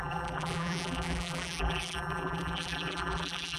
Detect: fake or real fake